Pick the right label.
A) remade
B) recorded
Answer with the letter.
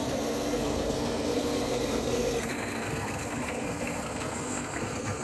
A